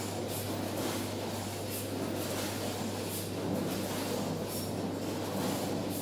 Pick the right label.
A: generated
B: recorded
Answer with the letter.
B